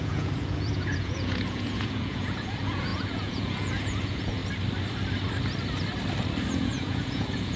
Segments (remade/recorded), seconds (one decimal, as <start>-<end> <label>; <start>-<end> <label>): 0.0-4.4 remade; 4.4-6.5 recorded; 6.5-7.6 remade